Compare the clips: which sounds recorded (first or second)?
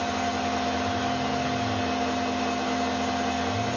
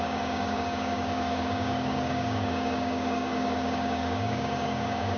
first